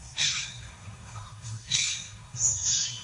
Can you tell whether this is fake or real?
fake